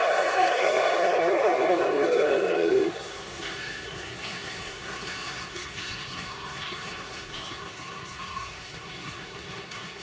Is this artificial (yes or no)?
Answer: yes